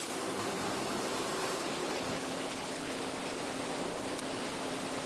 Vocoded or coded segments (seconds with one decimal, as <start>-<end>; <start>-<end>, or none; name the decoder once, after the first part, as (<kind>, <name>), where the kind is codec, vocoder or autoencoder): 1.8-3.0 (codec, HILCodec)

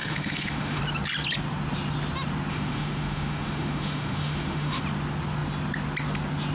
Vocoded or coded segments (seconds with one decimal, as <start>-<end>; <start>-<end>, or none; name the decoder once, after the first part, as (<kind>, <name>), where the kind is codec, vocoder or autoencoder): 0.0-0.8 (autoencoder, DAC-VAE); 2.5-4.8

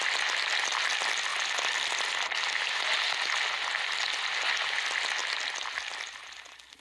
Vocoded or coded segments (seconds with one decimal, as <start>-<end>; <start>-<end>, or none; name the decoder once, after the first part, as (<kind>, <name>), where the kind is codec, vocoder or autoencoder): none

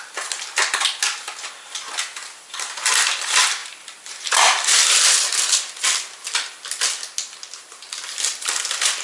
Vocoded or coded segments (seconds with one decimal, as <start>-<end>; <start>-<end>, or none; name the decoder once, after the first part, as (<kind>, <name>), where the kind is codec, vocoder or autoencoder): 2.1-2.9 (vocoder, BigVGAN v2); 3.6-5.7

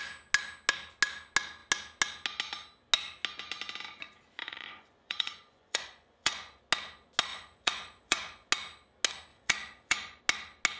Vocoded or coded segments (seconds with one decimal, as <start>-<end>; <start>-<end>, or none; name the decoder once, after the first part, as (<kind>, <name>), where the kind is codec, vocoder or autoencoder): 4.4-6.6 (vocoder, Vocos); 7.3-8.5; 9.3-10.2

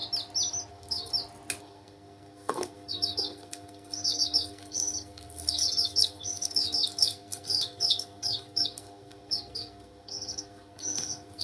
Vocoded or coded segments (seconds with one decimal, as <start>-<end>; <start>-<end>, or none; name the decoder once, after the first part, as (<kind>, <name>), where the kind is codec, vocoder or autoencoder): 0.7-1.1 (codec, SNAC); 1.6-11.4